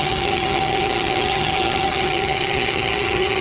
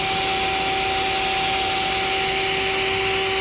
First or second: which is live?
second